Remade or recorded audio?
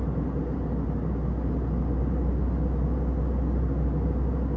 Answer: recorded